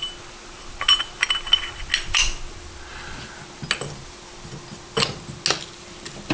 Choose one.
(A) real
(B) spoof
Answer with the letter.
A